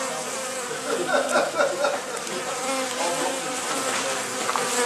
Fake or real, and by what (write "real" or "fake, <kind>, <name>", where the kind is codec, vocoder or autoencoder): real